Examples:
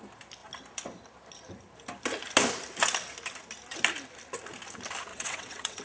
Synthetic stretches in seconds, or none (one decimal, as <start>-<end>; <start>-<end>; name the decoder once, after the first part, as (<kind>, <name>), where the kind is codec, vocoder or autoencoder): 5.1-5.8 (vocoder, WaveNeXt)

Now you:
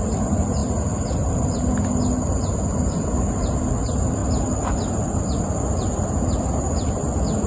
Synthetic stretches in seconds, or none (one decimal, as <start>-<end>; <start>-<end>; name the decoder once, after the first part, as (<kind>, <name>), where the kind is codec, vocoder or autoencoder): none

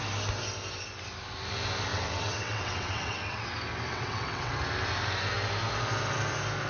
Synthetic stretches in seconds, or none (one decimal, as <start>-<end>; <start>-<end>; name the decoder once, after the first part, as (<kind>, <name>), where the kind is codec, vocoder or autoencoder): 1.9-3.5 (vocoder, WaveNeXt); 3.9-4.5